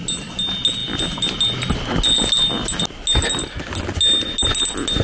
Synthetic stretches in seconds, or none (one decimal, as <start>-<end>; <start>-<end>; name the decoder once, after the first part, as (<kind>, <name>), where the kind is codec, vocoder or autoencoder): none